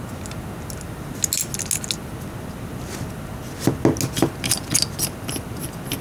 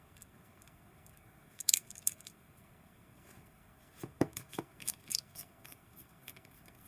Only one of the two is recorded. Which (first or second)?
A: first